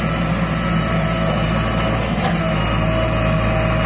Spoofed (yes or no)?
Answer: no